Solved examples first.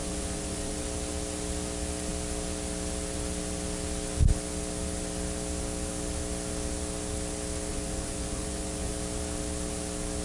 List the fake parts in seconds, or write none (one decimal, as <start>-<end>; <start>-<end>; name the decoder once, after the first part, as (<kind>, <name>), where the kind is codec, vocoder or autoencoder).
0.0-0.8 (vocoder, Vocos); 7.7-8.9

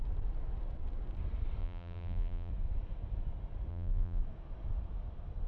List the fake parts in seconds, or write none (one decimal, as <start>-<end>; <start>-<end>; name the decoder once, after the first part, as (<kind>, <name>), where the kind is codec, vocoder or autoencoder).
1.6-2.5 (vocoder, BigVGAN v2); 3.7-4.2

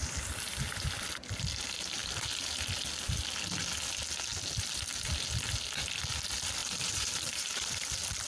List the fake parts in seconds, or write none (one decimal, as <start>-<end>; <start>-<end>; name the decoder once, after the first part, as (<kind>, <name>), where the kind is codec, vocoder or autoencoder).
6.6-7.7 (vocoder, BigVGAN v2)

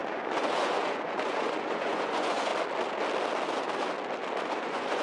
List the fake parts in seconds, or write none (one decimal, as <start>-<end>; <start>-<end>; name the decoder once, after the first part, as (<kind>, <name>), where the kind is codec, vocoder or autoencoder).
0.0-2.5 (vocoder, Vocos); 4.4-5.0

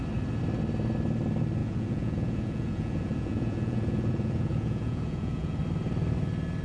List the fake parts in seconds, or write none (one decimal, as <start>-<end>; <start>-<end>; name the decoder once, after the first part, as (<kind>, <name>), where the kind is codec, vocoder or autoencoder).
1.6-5.6 (vocoder, Vocos)

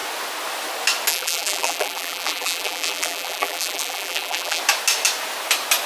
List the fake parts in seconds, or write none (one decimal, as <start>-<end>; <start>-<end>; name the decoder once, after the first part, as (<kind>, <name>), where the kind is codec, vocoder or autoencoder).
1.1-4.6 (vocoder, BigVGAN v2)

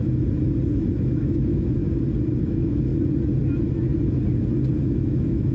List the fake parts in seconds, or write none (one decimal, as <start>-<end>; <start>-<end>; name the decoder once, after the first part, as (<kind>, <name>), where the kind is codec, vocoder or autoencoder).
1.0-1.8 (autoencoder, DAC-VAE); 2.4-2.9; 4.8-5.5

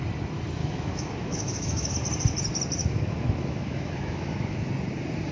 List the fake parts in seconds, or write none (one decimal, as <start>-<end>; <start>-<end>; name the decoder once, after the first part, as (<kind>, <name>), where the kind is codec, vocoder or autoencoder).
0.6-1.9 (autoencoder, DAC-VAE); 2.8-4.7